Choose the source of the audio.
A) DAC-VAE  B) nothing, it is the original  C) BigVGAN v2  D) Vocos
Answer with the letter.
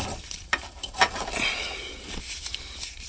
C